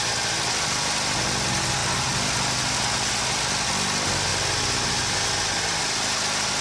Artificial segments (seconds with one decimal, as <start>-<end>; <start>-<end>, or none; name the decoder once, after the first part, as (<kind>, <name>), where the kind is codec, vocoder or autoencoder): none